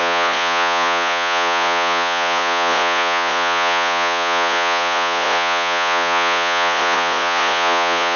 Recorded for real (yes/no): no